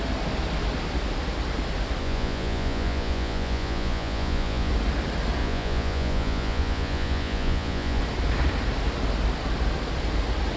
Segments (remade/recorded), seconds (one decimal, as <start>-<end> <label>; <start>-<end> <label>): 0.0-2.0 recorded; 2.0-4.7 remade; 4.7-5.4 recorded; 5.4-8.0 remade; 8.0-10.6 recorded